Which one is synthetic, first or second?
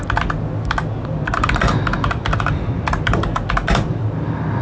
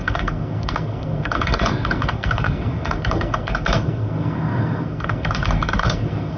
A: second